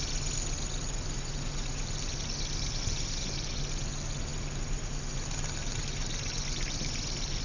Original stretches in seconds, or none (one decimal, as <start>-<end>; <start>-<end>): 0.0-7.4